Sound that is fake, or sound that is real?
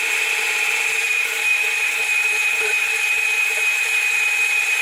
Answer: fake